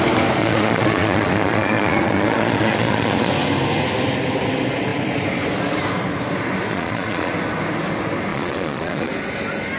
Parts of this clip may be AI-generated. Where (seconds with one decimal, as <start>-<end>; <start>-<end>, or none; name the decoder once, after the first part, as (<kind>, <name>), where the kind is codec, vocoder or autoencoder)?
0.4-3.3 (vocoder, Vocos); 6.7-7.3; 8.3-9.1